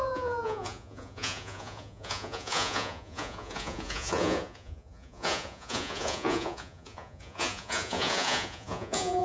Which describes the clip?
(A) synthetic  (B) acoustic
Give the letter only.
A